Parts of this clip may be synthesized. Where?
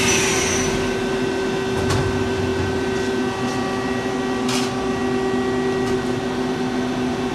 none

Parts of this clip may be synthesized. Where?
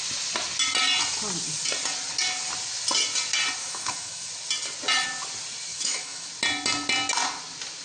3.6-4.3 (autoencoder, DAC-VAE); 5.7-6.3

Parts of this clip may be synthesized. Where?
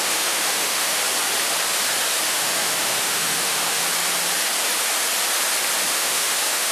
0.0-1.0 (autoencoder, DAC-VAE); 2.3-3.8; 5.9-6.7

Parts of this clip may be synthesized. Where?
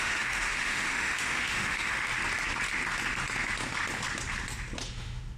0.0-2.1 (autoencoder, DAC-VAE); 4.9-5.4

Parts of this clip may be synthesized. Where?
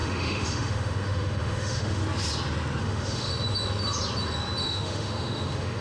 0.0-2.0 (autoencoder, DAC-VAE); 2.8-3.3; 4.6-5.8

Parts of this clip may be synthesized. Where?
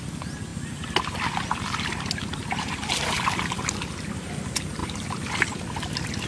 none